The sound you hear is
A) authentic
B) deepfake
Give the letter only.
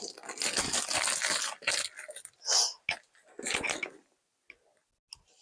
A